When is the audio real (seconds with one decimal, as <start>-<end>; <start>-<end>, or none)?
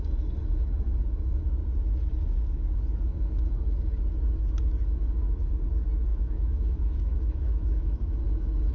0.0-6.1; 8.2-8.7